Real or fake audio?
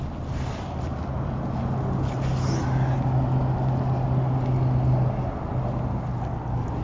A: real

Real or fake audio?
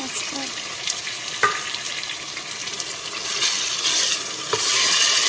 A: real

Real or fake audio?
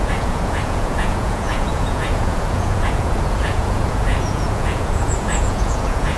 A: fake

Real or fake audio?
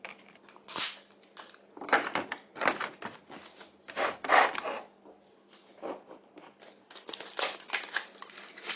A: real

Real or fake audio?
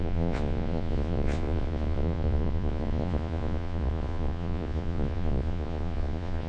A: fake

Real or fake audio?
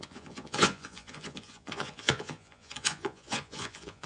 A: fake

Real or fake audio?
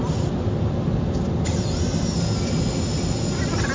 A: real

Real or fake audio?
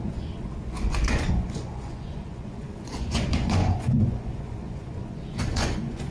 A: fake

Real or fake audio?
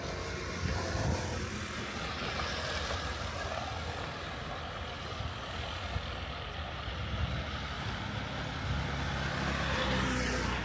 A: real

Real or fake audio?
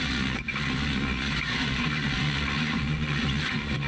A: fake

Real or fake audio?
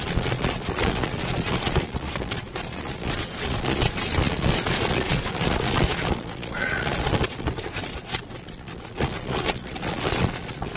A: fake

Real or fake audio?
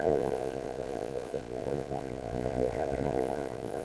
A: fake